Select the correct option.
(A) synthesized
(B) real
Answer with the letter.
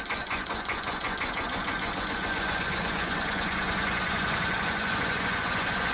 A